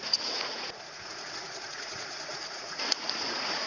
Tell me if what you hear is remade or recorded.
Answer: remade